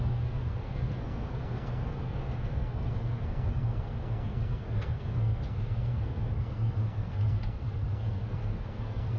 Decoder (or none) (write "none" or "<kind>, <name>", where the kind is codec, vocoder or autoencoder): codec, SNAC